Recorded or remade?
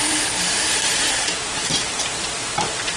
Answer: remade